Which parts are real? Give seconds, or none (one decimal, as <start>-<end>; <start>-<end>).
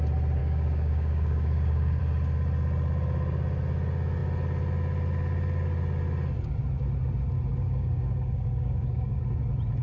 0.0-0.4; 2.0-7.5; 9.2-9.8